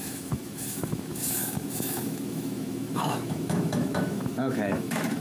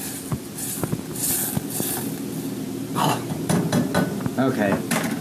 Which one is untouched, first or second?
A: second